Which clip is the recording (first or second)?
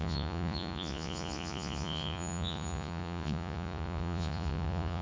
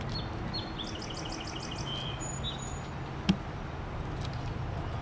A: second